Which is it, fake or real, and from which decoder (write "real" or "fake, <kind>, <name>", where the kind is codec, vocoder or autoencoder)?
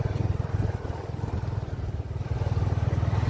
real